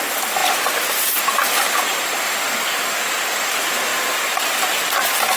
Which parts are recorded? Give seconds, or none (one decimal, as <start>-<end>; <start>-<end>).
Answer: 0.0-3.9